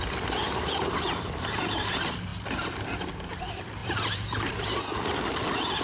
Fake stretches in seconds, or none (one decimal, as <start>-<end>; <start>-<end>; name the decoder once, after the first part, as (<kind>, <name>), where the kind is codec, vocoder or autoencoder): 0.0-2.3 (vocoder, BigVGAN v2); 2.8-5.8